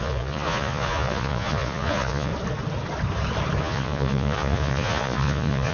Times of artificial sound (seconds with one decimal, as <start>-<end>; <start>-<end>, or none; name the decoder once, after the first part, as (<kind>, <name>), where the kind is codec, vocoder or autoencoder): 0.0-2.3 (vocoder, Vocos); 3.6-5.7